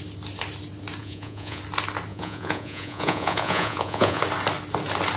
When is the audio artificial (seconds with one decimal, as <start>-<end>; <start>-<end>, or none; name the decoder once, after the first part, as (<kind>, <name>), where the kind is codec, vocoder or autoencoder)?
1.0-1.6 (vocoder, Vocos); 2.1-4.2